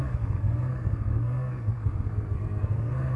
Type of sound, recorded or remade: remade